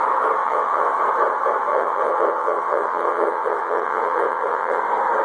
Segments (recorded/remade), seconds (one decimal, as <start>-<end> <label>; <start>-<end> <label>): 0.0-0.4 recorded; 0.4-1.0 remade; 1.0-1.7 recorded; 1.7-4.8 remade; 4.8-5.2 recorded